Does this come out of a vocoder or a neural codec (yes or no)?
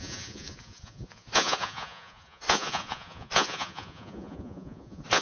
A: yes